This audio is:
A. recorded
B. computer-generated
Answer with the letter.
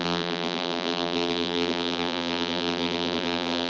B